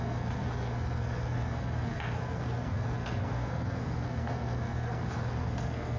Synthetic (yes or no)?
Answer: yes